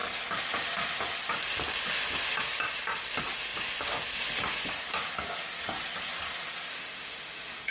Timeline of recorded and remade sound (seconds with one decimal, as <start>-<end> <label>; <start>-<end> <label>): 0.0-6.7 recorded; 6.7-7.7 remade

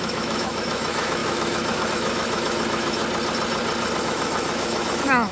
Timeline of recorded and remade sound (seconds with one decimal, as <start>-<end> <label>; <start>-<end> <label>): 0.0-3.0 remade; 3.0-4.0 recorded; 4.0-5.3 remade

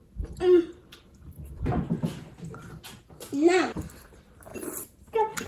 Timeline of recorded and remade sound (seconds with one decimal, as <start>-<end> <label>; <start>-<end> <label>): 0.0-5.5 recorded

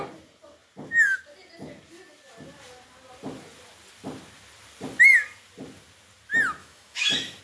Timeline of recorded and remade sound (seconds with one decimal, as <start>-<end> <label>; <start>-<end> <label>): 0.0-6.6 recorded; 6.6-7.4 remade

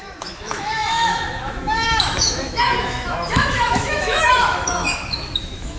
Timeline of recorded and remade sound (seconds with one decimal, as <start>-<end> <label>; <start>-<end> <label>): 0.0-5.8 remade

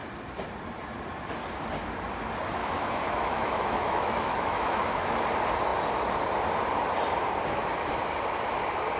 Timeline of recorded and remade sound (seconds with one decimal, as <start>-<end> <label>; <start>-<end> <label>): 0.0-2.6 recorded; 2.6-5.2 remade; 5.2-9.0 recorded